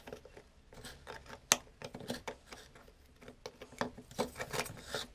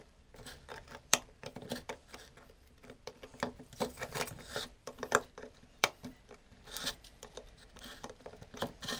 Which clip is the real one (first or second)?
first